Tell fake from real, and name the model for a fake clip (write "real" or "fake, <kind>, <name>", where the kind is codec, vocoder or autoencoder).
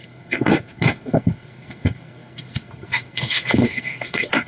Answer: fake, codec, SNAC